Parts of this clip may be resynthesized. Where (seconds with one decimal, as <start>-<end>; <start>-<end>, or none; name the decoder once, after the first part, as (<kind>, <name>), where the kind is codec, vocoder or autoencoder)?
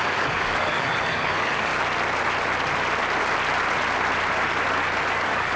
0.0-1.7 (codec, DAC); 5.1-5.6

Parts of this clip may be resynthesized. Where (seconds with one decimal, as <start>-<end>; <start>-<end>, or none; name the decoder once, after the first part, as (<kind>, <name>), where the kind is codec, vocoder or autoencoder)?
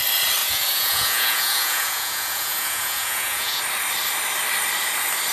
0.4-3.6 (vocoder, Vocos)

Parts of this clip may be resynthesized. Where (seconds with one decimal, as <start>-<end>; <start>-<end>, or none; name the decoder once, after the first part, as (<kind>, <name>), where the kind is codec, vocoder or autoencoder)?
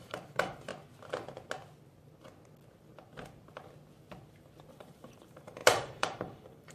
0.0-0.7 (vocoder, BigVGAN v2); 4.7-6.7